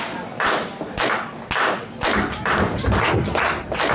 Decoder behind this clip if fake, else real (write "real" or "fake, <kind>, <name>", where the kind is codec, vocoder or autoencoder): real